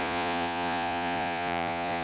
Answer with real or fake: fake